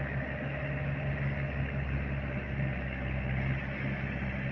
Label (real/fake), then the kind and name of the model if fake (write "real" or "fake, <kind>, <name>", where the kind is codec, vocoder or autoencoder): real